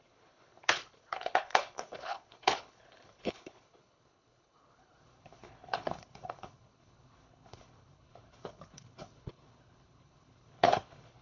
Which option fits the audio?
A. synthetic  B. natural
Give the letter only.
A